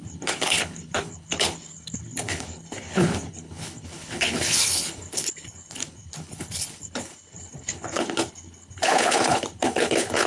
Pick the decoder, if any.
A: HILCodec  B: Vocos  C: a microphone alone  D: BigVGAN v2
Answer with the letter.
A